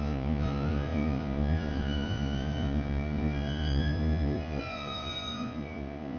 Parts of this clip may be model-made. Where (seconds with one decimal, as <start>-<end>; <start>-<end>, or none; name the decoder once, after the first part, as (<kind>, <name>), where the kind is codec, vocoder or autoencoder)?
0.0-6.2 (vocoder, Vocos)